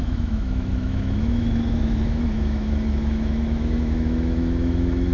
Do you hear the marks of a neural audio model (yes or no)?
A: yes